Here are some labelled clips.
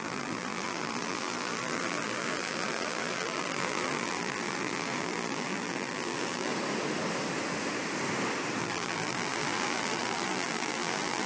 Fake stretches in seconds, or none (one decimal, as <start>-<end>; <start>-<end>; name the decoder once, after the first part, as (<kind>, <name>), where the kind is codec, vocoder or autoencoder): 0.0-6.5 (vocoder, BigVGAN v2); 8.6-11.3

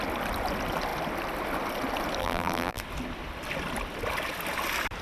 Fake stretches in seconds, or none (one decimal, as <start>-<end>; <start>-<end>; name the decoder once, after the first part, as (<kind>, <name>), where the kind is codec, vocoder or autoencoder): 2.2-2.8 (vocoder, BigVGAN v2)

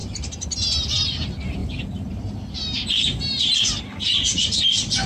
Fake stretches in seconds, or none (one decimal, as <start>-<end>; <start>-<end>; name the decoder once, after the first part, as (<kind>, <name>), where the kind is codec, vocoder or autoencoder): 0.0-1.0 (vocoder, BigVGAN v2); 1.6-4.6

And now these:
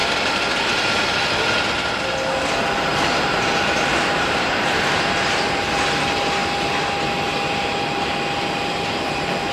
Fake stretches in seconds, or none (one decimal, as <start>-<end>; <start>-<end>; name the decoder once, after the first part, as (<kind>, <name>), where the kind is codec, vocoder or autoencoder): 0.0-0.6 (vocoder, BigVGAN v2); 2.9-6.0

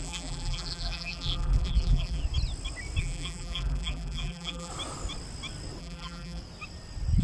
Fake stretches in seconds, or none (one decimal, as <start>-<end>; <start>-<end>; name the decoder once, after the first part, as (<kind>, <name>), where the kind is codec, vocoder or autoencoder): 0.0-2.2 (vocoder, BigVGAN v2); 3.0-4.7; 5.8-6.4

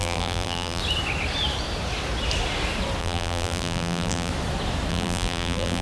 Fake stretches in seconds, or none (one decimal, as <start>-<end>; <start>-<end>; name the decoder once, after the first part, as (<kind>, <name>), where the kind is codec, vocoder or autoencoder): 0.0-0.8 (vocoder, BigVGAN v2); 3.0-4.3; 4.9-5.8

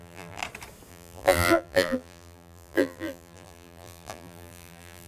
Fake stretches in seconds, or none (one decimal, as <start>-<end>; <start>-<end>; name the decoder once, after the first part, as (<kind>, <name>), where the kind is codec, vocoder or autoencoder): 0.0-0.4 (vocoder, BigVGAN v2); 0.9-5.1

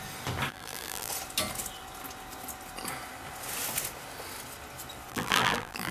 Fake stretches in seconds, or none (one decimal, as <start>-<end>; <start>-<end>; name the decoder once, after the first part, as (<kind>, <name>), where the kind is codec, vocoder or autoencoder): 0.5-1.1 (vocoder, BigVGAN v2); 5.1-5.9